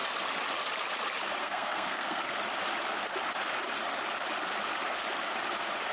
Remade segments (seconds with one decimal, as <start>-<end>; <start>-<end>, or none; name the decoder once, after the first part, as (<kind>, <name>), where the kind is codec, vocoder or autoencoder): 1.4-2.2 (codec, SNAC)